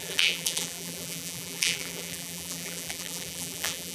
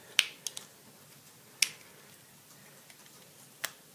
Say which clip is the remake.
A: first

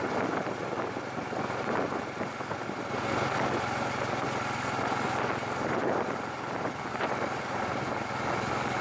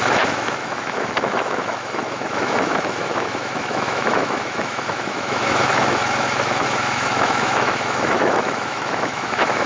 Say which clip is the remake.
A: second